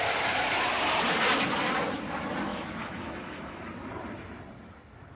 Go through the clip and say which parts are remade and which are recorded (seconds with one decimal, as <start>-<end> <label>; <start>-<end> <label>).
0.0-2.5 recorded; 2.5-3.6 remade; 3.6-5.1 recorded